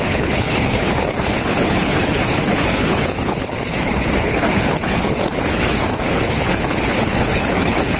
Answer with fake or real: fake